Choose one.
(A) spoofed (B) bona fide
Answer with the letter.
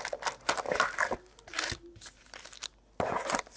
B